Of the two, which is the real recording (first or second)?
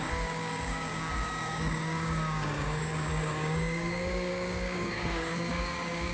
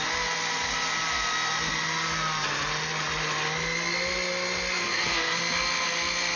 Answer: second